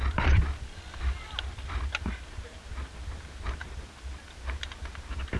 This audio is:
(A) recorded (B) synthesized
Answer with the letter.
A